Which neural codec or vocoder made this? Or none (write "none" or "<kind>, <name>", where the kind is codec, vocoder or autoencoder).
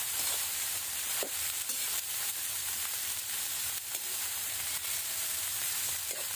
vocoder, BigVGAN v2